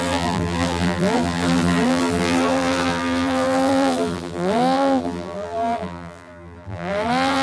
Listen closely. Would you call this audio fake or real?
fake